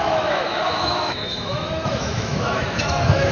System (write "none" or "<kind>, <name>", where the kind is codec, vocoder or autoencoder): autoencoder, DAC-VAE